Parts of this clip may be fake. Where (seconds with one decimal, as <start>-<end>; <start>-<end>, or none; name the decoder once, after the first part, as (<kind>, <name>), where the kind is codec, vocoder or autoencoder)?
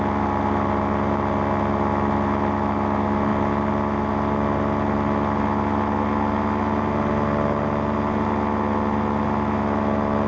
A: none